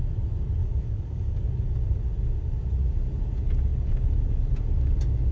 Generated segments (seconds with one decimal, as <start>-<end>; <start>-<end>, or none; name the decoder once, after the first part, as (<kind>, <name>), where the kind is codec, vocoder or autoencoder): 0.6-1.5 (codec, DAC)